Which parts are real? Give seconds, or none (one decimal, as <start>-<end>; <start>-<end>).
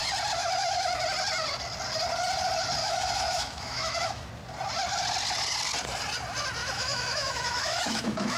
0.0-0.4; 1.0-2.8; 4.3-6.6